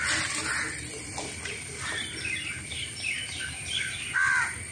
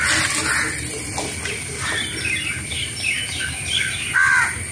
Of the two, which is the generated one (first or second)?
first